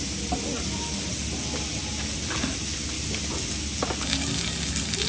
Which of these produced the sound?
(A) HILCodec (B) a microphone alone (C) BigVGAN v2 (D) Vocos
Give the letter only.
B